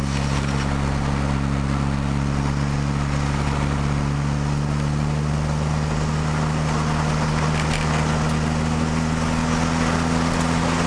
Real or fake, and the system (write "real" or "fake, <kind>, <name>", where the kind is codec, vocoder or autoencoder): real